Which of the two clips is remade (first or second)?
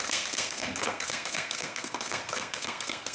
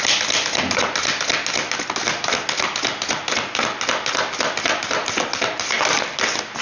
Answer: first